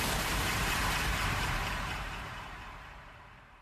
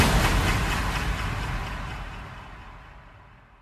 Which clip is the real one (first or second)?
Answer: second